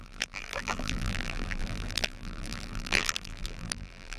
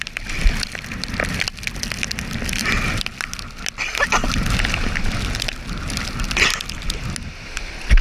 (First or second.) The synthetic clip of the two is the first